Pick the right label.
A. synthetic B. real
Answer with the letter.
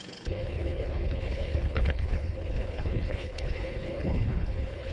A